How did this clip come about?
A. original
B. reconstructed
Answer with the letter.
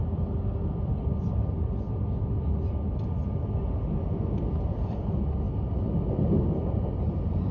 A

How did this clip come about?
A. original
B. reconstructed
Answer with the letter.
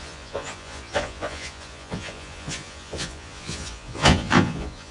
B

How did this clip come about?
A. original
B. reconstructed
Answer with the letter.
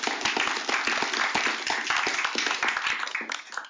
A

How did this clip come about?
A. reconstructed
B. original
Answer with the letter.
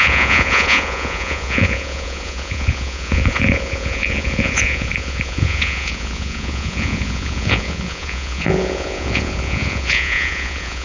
A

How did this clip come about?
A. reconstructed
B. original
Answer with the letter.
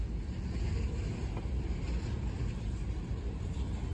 B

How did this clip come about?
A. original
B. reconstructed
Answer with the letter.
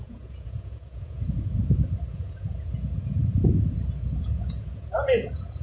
B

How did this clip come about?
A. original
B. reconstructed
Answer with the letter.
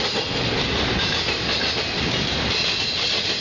A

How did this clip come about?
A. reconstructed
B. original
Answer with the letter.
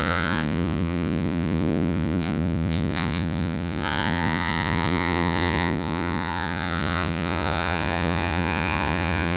A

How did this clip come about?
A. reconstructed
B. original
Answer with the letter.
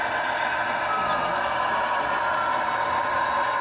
B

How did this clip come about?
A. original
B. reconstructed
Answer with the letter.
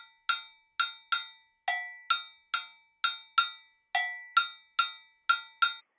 A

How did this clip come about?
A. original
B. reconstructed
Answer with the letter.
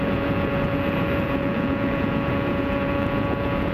B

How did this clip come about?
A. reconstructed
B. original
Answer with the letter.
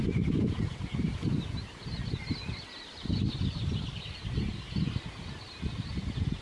B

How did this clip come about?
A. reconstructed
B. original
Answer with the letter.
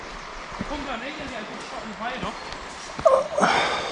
B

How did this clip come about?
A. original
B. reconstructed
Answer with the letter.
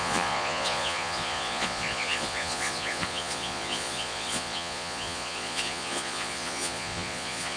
B